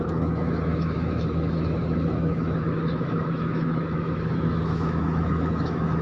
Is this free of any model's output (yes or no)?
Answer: no